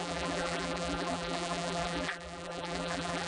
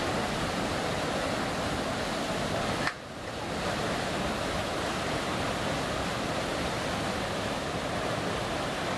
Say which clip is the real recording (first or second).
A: second